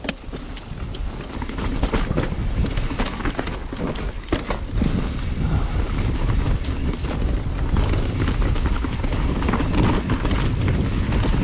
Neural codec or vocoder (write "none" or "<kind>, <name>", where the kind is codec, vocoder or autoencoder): none